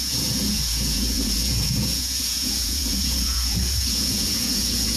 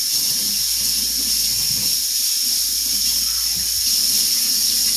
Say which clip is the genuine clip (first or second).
second